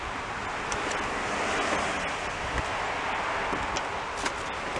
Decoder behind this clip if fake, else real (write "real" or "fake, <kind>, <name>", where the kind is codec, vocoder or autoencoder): real